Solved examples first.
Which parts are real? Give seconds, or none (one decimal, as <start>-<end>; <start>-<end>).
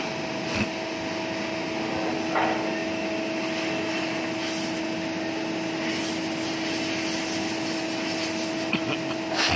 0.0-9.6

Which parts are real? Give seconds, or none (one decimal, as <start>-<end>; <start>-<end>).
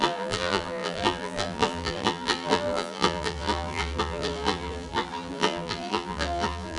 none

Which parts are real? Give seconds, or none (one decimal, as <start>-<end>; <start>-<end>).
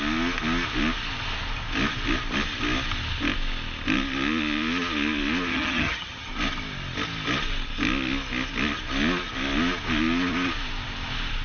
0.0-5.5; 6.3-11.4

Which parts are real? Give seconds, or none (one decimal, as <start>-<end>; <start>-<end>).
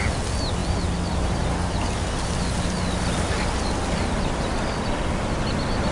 0.0-5.9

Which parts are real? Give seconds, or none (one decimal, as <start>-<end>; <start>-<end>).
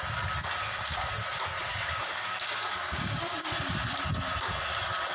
0.0-1.7; 3.5-5.1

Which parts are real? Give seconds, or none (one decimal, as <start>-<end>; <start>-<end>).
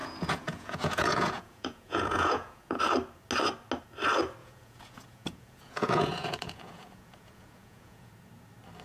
2.8-4.4; 8.1-8.8